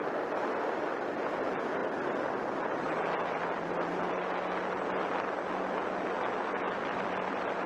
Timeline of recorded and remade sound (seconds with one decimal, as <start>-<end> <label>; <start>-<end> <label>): 0.0-1.8 recorded; 1.8-4.2 remade; 4.2-7.7 recorded

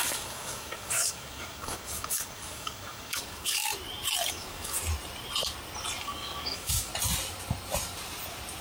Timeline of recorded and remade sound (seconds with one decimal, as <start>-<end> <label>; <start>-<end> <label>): 0.0-3.7 remade; 3.7-4.3 recorded; 4.3-4.8 remade; 4.8-6.0 recorded; 6.0-6.9 remade; 6.9-8.6 recorded